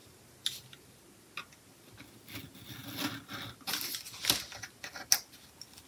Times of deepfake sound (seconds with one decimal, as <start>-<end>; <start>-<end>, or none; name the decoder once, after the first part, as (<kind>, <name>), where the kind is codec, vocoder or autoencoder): none